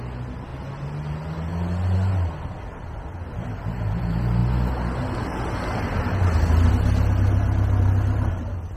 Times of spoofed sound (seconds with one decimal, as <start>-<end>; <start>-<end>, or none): none